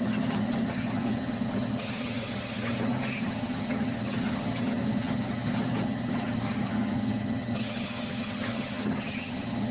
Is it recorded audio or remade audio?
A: remade